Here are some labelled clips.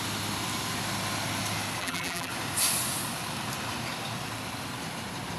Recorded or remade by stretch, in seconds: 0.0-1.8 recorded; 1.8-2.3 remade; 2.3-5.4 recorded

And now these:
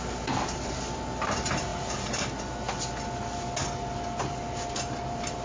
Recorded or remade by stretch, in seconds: 0.0-1.7 recorded; 1.7-2.3 remade; 2.3-5.4 recorded

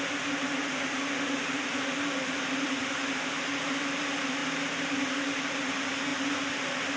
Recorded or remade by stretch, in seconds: 0.0-4.4 remade; 4.4-5.4 recorded; 5.4-7.0 remade

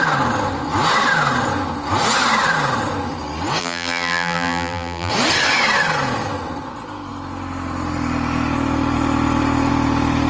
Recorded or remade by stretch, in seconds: 0.0-3.6 recorded; 3.6-5.1 remade; 5.1-10.3 recorded

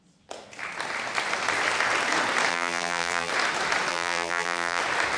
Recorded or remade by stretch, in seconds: 0.0-2.5 recorded; 2.5-3.3 remade; 3.3-3.9 recorded; 3.9-4.8 remade; 4.8-5.2 recorded

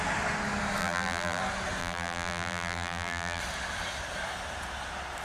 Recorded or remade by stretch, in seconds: 0.0-0.8 recorded; 0.8-1.4 remade; 1.4-1.8 recorded; 1.8-3.4 remade; 3.4-5.2 recorded